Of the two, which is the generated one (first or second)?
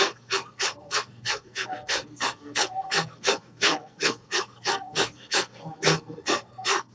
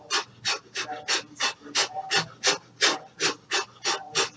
first